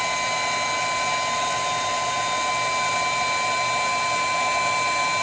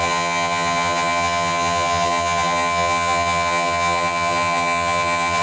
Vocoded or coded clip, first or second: second